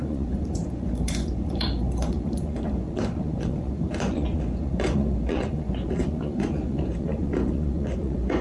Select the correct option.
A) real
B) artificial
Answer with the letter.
B